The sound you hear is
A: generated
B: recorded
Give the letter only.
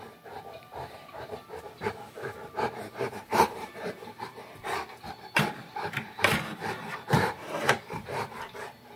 A